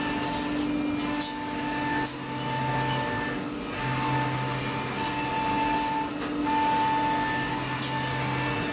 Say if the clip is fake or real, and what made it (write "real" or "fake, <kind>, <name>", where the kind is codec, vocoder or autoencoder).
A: real